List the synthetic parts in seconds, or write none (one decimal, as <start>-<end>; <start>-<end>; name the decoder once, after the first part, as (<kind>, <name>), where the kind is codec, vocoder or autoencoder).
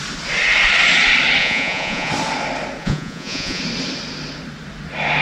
1.4-2.1 (vocoder, Vocos); 2.8-3.6